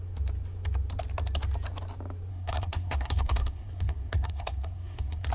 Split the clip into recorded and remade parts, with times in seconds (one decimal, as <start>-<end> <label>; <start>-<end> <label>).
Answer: 0.0-2.3 recorded; 2.3-5.3 remade